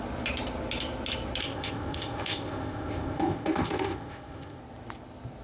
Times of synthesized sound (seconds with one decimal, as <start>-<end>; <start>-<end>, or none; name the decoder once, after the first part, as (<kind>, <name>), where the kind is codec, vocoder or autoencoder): 1.4-4.6 (codec, ZipCodec)